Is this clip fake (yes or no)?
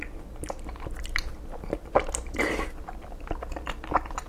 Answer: no